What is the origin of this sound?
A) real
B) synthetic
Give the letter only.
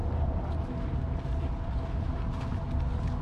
A